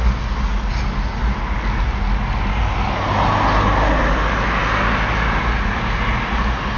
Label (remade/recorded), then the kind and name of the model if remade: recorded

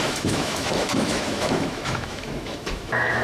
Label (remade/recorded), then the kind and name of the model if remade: remade, autoencoder, DAC-VAE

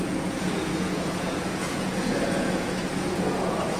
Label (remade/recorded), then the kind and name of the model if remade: remade, vocoder, Vocos